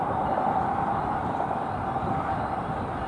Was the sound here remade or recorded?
recorded